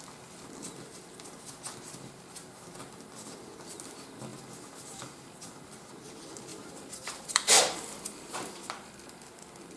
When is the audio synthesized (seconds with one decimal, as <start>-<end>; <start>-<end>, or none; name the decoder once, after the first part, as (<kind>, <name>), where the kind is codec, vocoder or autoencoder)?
4.3-5.9 (vocoder, BigVGAN v2); 6.5-8.9